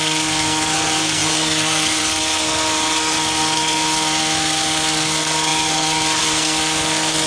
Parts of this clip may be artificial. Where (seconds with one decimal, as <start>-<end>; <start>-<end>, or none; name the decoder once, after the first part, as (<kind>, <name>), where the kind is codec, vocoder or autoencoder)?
0.0-7.3 (codec, SNAC)